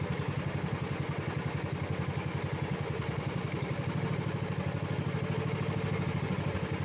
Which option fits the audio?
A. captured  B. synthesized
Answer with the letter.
A